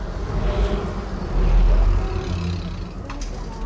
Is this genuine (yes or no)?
yes